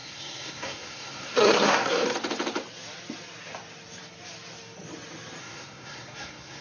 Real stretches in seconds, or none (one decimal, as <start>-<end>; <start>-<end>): 2.2-5.4